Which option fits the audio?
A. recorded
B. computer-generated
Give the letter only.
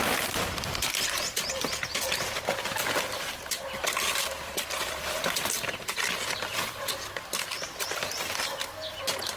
B